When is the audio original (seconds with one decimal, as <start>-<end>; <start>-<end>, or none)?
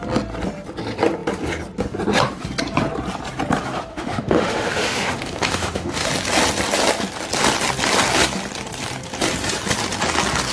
0.0-3.9; 6.1-10.5